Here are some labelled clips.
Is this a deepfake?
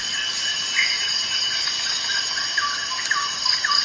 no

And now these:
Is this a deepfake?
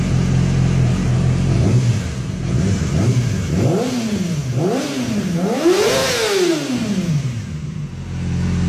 no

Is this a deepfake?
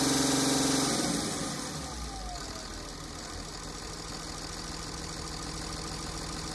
no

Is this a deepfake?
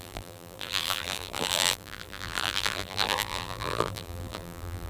yes